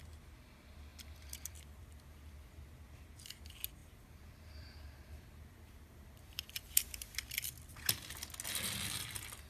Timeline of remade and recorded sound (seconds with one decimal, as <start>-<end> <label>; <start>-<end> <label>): 0.0-0.9 recorded; 0.9-2.3 remade; 2.3-3.8 recorded; 3.8-8.1 remade; 8.1-9.5 recorded